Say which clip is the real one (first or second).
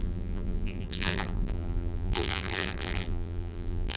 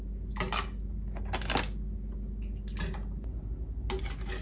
second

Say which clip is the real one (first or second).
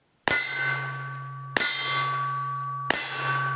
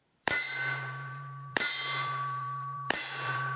first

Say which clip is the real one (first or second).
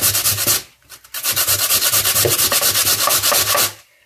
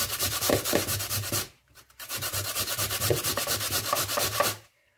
first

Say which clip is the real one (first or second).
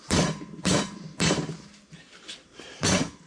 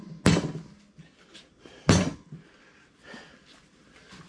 second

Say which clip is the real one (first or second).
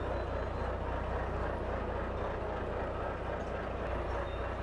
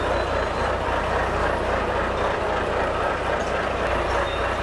first